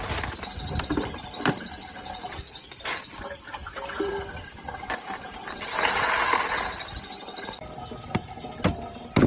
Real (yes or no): yes